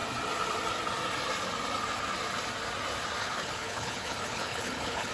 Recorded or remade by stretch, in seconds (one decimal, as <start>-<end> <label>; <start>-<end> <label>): 0.0-3.2 recorded; 3.2-5.1 remade